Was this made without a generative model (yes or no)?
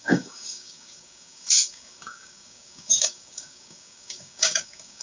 no